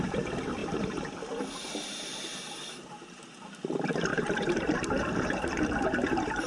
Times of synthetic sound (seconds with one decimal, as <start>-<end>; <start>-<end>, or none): 0.6-3.4; 4.1-6.5